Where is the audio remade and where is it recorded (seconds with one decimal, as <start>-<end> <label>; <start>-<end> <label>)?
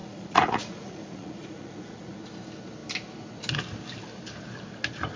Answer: 0.0-2.2 remade; 2.2-5.2 recorded